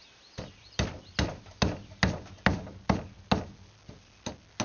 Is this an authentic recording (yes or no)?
yes